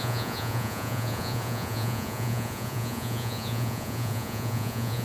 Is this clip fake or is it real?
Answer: fake